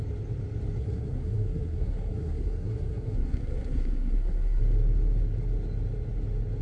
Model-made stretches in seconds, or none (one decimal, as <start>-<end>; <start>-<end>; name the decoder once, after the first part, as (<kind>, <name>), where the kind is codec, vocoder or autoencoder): 0.8-4.6 (codec, SNAC)